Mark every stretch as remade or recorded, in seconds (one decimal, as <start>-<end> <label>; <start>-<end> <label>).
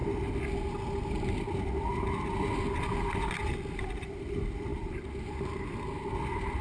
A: 0.0-4.7 recorded; 4.7-5.3 remade; 5.3-6.6 recorded